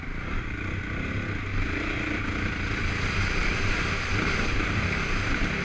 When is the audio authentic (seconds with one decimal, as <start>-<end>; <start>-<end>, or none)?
0.0-1.5; 2.1-3.4; 4.7-5.6